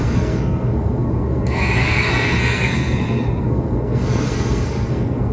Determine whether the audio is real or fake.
fake